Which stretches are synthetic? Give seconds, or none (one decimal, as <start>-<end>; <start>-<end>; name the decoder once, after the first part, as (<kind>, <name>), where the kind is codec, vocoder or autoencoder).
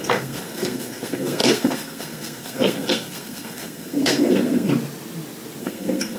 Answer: 0.0-4.7 (codec, SNAC); 5.6-6.2